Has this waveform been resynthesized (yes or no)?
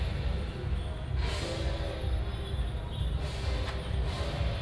no